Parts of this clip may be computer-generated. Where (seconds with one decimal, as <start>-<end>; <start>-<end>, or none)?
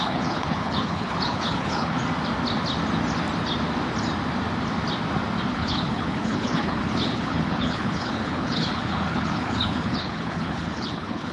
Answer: 0.0-2.0; 5.5-11.3